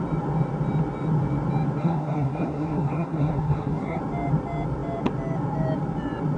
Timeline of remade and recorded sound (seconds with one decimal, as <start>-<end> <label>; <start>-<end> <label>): 0.0-1.8 recorded; 1.8-4.0 remade; 4.0-6.4 recorded